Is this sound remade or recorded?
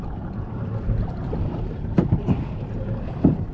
remade